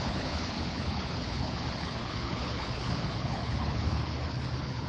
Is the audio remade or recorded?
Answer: remade